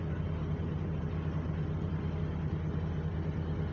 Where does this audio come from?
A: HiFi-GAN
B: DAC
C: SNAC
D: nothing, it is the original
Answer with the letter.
D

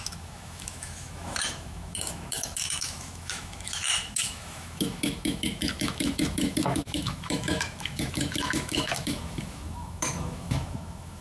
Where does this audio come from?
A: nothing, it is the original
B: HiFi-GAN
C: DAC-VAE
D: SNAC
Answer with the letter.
C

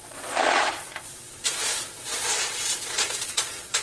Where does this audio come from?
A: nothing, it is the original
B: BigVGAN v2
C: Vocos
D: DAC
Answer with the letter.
C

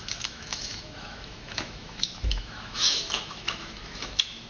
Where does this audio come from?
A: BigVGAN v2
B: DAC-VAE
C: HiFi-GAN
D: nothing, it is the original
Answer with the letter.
B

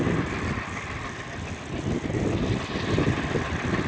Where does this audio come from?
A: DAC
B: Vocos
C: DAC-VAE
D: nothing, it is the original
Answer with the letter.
D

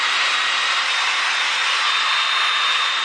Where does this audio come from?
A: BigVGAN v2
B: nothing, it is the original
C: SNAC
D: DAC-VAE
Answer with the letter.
B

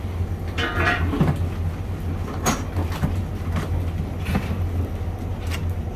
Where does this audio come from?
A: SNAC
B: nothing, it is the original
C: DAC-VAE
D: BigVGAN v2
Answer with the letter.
B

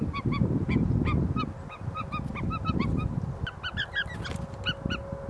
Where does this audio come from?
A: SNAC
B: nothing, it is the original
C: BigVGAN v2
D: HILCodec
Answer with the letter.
B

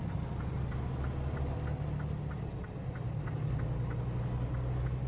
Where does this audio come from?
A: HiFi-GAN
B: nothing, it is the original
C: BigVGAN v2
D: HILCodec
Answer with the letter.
B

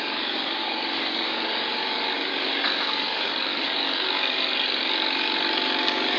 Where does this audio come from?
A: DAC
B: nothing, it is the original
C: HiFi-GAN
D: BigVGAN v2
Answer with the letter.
A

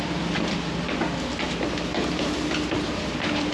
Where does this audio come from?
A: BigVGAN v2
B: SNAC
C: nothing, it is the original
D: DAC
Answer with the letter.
A